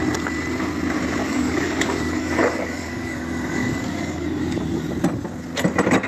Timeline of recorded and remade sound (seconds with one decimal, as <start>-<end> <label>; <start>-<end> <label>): 0.0-1.2 recorded; 1.2-4.9 remade; 4.9-6.1 recorded